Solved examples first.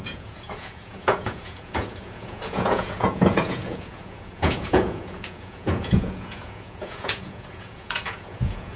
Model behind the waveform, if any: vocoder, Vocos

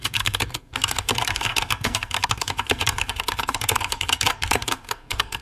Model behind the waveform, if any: codec, SNAC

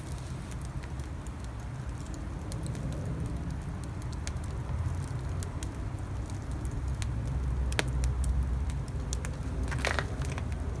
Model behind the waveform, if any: none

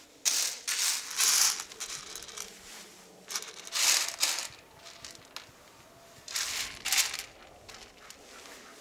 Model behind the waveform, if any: none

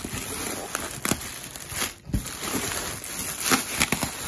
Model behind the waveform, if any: none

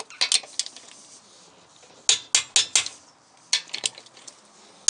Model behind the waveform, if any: none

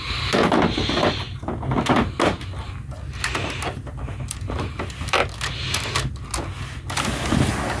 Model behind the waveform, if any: none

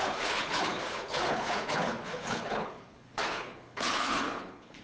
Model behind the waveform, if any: codec, HILCodec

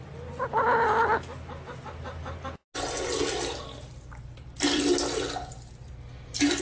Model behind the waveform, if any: none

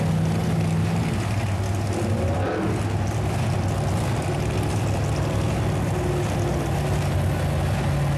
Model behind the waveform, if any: none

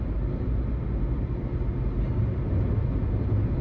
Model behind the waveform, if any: none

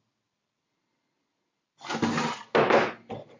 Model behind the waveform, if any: none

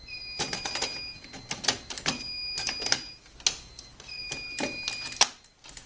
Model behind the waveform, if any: none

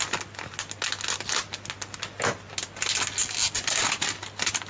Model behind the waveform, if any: none